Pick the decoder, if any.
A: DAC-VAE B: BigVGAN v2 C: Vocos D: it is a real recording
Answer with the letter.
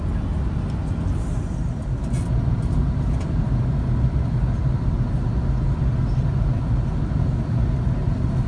D